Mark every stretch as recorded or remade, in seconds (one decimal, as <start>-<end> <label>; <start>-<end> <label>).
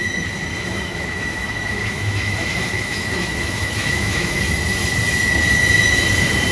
0.0-0.5 recorded; 0.5-4.4 remade; 4.4-6.5 recorded